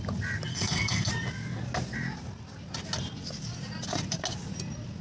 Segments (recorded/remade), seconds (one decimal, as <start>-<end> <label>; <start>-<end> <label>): 0.0-0.5 recorded; 0.5-1.1 remade; 1.1-5.0 recorded